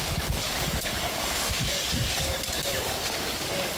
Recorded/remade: remade